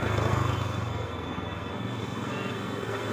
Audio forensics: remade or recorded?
remade